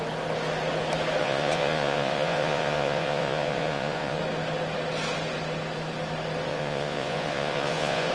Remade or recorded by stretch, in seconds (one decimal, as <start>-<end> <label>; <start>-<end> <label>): 0.0-1.2 recorded; 1.2-4.2 remade; 4.2-6.5 recorded; 6.5-8.1 remade